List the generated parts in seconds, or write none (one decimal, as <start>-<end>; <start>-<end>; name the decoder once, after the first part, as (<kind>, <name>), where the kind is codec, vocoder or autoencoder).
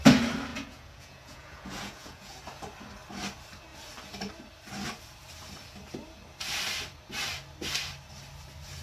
0.5-2.4 (vocoder, Vocos)